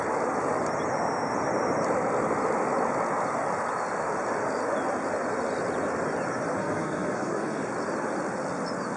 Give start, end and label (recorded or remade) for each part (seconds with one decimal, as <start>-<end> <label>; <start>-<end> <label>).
0.0-6.5 recorded; 6.5-7.6 remade; 7.6-9.0 recorded